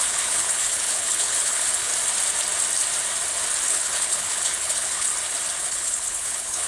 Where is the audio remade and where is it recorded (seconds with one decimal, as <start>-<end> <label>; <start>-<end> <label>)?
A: 0.0-1.9 remade; 1.9-3.7 recorded; 3.7-5.1 remade; 5.1-5.6 recorded; 5.6-6.7 remade